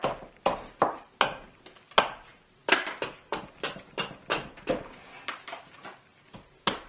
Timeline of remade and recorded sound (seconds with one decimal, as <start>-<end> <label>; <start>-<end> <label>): 0.0-6.9 recorded